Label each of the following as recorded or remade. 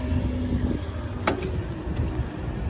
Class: recorded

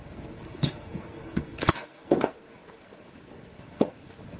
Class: remade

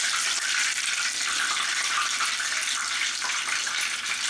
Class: recorded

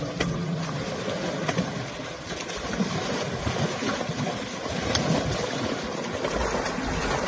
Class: recorded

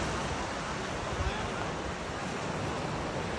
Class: recorded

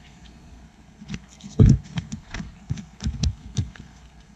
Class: remade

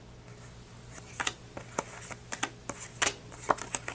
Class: recorded